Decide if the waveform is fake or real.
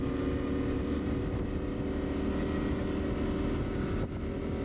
real